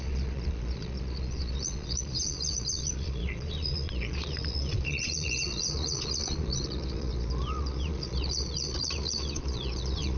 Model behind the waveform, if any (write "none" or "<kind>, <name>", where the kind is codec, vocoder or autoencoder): vocoder, Vocos